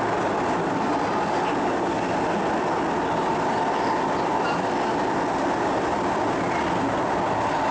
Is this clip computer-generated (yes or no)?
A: no